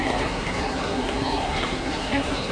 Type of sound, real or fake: fake